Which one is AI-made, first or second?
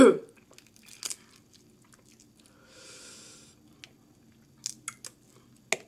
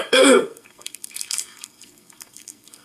second